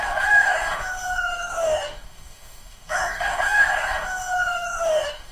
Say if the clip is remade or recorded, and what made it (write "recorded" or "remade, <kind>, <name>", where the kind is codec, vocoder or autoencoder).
remade, codec, DAC